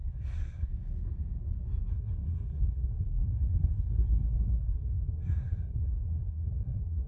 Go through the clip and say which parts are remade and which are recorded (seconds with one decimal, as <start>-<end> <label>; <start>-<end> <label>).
0.0-0.7 remade; 0.7-1.9 recorded; 1.9-7.1 remade